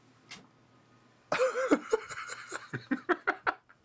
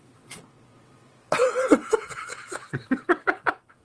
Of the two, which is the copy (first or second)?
second